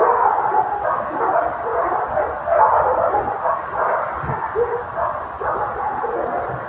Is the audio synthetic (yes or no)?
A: no